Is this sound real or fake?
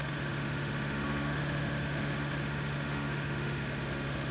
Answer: fake